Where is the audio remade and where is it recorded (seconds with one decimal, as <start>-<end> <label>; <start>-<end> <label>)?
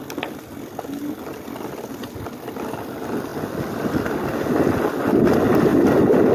0.0-1.3 recorded; 1.3-2.0 remade; 2.0-3.3 recorded; 3.3-5.0 remade; 5.0-5.7 recorded; 5.7-6.3 remade